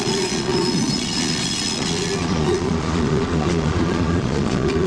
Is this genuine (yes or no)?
no